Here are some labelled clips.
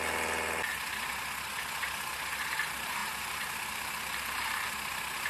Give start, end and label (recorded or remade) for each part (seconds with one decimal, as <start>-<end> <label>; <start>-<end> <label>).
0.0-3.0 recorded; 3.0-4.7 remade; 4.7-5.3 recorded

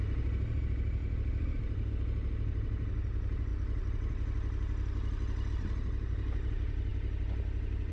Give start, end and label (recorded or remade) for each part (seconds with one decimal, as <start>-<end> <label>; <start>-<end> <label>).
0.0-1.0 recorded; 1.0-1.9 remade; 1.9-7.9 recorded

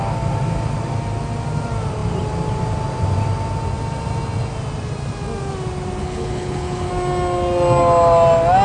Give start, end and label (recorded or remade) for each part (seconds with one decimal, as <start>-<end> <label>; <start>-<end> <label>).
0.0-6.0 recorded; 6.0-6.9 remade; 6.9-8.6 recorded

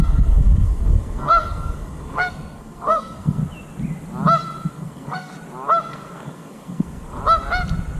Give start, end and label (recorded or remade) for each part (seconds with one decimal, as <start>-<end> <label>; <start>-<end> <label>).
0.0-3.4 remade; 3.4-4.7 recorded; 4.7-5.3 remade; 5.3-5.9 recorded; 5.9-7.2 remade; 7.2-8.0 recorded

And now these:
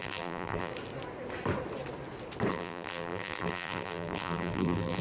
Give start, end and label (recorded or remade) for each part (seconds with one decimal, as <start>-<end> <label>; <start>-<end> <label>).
0.0-0.7 remade; 0.7-2.5 recorded; 2.5-5.0 remade

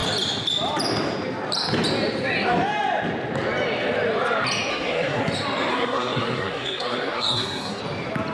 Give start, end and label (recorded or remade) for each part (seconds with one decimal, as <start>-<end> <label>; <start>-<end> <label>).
0.0-4.7 recorded; 4.7-5.2 remade; 5.2-5.7 recorded; 5.7-7.8 remade; 7.8-8.3 recorded